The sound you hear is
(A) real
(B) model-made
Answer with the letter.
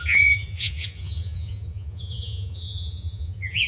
B